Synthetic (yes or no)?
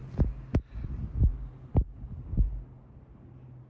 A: no